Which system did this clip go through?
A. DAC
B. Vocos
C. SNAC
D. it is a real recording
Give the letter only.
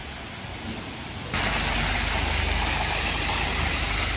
D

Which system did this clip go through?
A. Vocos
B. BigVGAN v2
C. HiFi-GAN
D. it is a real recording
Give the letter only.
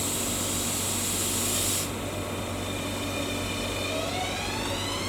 D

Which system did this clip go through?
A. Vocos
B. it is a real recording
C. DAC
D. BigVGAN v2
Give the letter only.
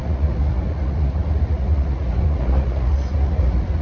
A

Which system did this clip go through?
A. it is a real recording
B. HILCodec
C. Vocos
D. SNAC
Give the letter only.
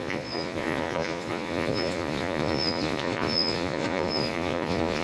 C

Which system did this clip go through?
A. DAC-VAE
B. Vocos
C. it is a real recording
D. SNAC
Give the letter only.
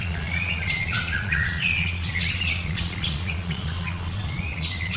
B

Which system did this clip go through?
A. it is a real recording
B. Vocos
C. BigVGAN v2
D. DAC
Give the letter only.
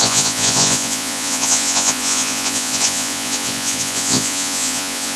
B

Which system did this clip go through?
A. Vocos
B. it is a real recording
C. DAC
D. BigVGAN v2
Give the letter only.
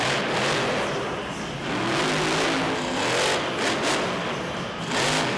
B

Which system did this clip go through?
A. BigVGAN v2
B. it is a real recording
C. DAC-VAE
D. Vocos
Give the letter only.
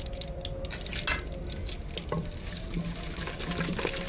B